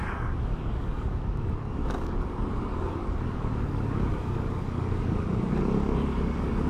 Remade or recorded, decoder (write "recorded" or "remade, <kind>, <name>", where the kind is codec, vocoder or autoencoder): remade, codec, DAC